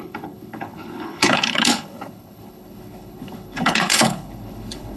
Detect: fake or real fake